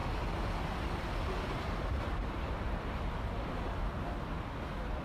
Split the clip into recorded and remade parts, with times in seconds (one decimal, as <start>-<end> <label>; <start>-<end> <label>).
0.0-5.0 recorded